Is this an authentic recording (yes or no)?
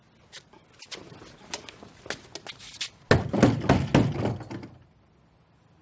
yes